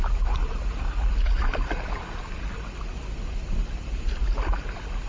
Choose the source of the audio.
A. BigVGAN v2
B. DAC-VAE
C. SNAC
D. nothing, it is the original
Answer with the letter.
D